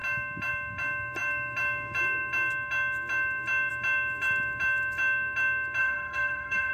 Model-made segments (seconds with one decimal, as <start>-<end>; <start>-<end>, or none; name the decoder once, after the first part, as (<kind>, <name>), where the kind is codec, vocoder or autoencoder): 5.8-6.7 (codec, SNAC)